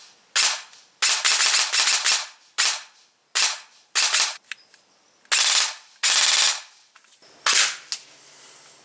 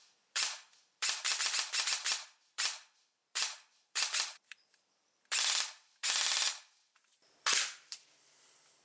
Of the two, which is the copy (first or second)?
second